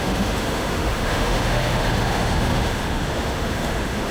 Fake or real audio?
fake